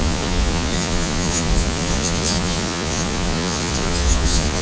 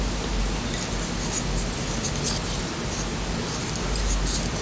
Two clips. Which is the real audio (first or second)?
second